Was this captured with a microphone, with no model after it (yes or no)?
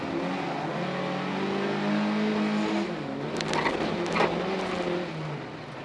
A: yes